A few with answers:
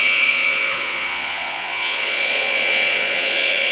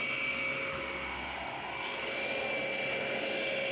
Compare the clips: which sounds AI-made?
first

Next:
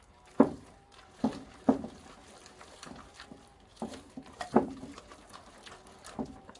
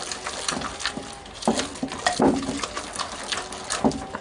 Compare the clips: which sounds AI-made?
first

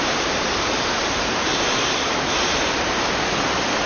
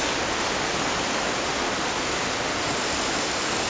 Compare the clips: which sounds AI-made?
first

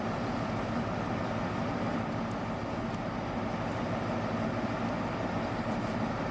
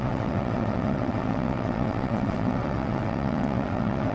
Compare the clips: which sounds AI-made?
second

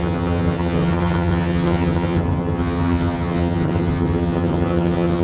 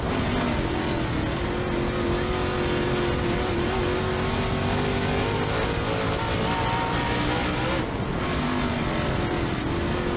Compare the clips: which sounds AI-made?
first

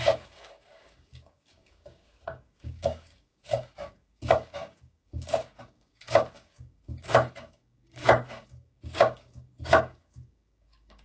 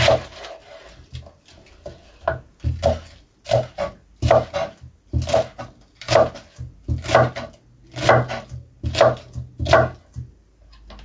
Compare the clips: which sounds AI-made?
first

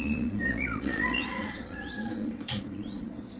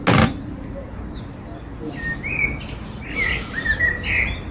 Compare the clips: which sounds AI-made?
first